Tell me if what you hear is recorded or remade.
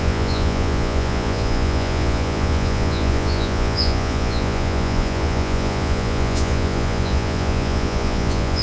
remade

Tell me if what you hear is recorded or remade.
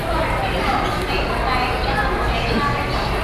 recorded